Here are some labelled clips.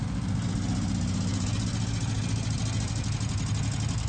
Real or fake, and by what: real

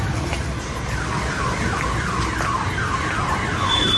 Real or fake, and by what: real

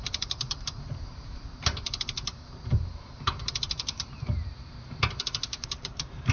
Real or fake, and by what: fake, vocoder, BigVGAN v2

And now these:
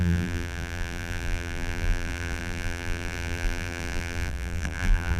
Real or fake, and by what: fake, vocoder, BigVGAN v2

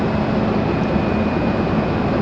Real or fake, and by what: real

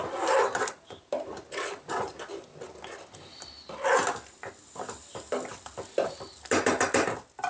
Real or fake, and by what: real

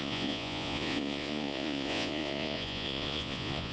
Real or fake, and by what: fake, vocoder, Vocos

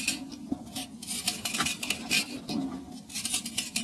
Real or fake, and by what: real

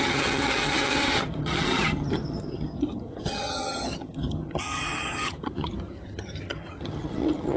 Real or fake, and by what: fake, vocoder, HiFi-GAN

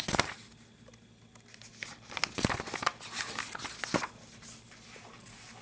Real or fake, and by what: real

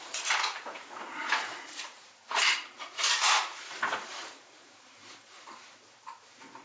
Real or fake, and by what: fake, vocoder, Vocos